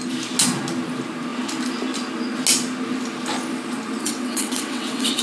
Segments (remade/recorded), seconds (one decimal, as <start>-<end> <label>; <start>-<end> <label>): 0.0-4.0 recorded; 4.0-5.2 remade